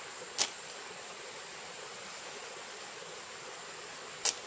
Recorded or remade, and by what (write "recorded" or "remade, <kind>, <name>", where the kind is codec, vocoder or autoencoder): recorded